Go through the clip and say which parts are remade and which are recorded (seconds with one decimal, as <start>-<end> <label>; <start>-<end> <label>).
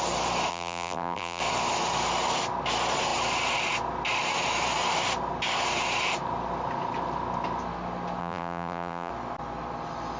0.0-0.5 recorded; 0.5-1.4 remade; 1.4-8.2 recorded; 8.2-9.1 remade; 9.1-10.2 recorded